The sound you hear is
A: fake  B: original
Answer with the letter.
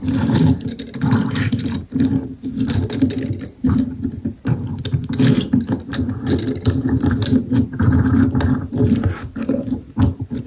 B